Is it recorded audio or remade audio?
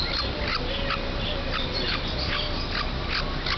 recorded